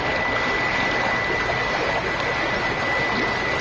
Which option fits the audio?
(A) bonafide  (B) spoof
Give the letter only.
A